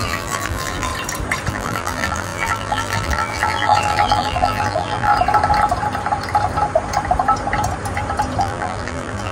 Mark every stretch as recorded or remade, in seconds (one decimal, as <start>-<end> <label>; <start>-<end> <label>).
0.0-0.9 remade; 0.9-1.5 recorded; 1.5-5.1 remade; 5.1-8.4 recorded; 8.4-9.3 remade